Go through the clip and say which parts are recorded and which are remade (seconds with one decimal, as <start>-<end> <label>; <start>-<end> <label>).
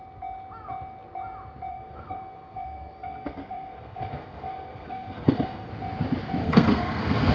0.0-1.7 recorded; 1.7-5.7 remade; 5.7-6.4 recorded; 6.4-7.3 remade